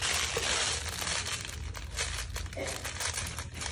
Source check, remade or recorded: recorded